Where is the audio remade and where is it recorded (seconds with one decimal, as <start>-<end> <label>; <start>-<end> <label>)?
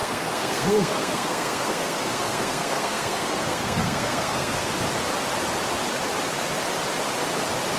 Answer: 0.0-4.7 remade; 4.7-7.8 recorded